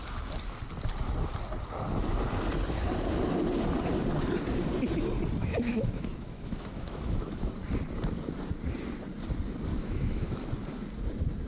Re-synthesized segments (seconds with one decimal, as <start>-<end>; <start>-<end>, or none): 5.4-7.5; 9.7-10.4